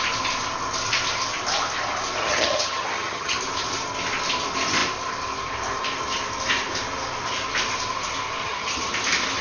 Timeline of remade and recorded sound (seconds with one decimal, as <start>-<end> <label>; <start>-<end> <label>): 0.0-2.2 recorded; 2.2-3.4 remade; 3.4-8.4 recorded; 8.4-8.9 remade; 8.9-9.4 recorded